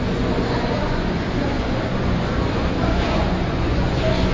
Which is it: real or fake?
fake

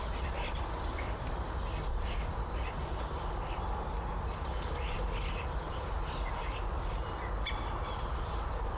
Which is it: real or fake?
real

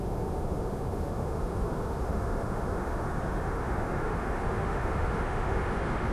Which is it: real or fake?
fake